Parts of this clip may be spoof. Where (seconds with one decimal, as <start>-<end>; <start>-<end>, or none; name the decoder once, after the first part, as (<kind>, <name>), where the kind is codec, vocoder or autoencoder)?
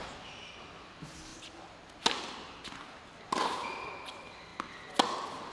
none